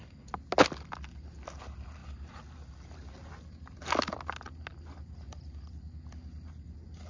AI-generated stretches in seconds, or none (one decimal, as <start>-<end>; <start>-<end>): none